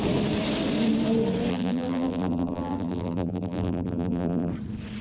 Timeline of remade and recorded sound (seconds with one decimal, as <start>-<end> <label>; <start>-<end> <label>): 0.0-1.5 recorded; 1.5-4.5 remade; 4.5-5.0 recorded